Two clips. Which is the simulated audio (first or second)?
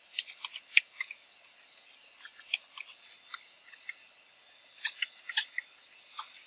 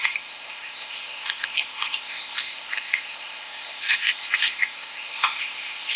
second